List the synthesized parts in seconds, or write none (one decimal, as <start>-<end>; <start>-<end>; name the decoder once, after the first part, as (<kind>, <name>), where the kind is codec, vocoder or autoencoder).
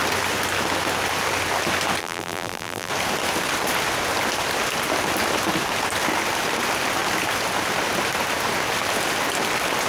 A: 2.0-2.9 (vocoder, BigVGAN v2)